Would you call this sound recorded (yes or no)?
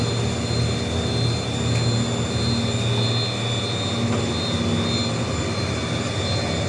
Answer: yes